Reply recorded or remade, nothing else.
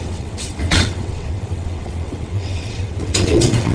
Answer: remade